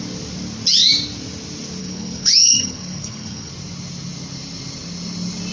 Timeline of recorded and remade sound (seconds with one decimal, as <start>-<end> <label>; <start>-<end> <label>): 0.0-1.8 recorded; 1.8-3.5 remade; 3.5-5.5 recorded